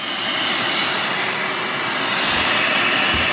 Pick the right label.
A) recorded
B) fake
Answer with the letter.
A